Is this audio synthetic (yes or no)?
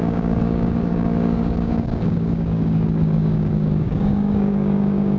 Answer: yes